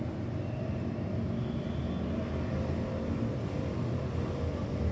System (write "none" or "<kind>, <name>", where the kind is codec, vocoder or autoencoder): none